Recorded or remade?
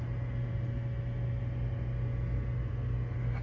recorded